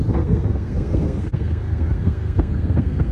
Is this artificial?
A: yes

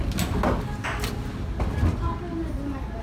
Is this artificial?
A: no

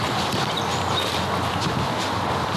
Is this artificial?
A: no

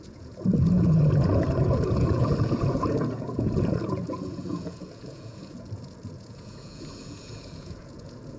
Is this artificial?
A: yes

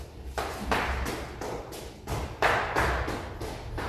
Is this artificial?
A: no